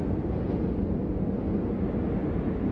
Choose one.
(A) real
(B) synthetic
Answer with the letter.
A